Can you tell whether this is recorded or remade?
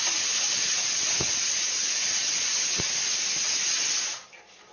recorded